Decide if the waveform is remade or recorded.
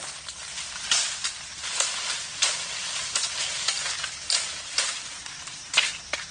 recorded